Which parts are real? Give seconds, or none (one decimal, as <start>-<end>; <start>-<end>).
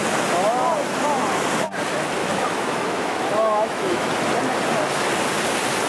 0.0-2.2; 4.1-5.9